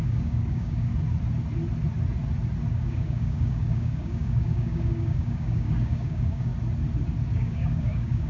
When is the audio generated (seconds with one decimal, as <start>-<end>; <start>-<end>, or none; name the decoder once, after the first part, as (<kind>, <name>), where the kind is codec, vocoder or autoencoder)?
0.0-0.9 (codec, DAC); 2.7-6.5; 7.3-8.3